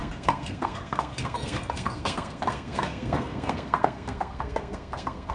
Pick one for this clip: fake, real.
fake